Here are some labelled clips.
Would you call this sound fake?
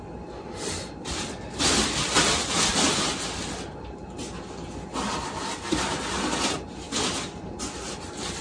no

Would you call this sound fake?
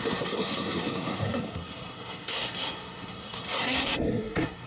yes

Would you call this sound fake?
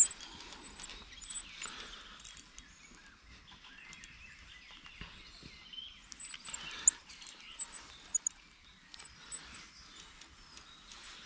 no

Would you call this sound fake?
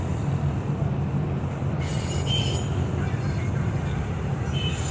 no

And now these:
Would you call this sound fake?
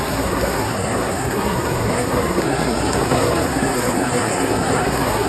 yes